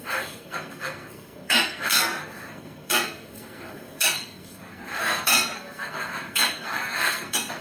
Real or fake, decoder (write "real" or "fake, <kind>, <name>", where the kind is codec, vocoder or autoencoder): fake, codec, SNAC